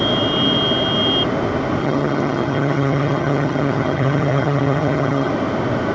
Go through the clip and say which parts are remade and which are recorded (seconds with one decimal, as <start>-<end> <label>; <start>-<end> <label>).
0.0-1.8 recorded; 1.8-5.3 remade; 5.3-5.9 recorded